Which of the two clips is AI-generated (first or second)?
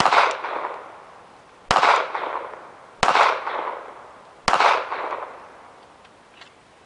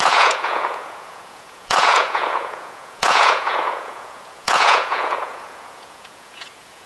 second